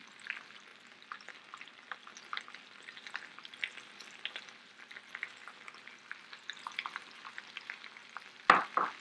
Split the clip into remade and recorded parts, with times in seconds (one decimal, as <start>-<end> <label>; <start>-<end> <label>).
0.0-9.0 recorded